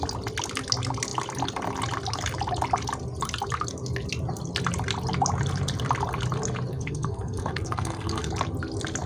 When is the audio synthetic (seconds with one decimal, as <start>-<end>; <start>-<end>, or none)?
6.7-8.3